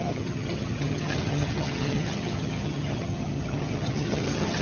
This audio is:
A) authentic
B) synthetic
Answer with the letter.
B